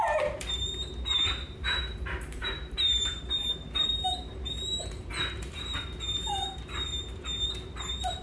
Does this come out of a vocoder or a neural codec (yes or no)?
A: yes